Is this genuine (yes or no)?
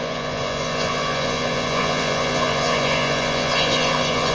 no